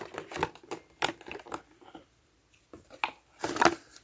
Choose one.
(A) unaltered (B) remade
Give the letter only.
A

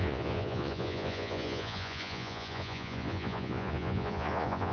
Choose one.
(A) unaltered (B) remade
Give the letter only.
B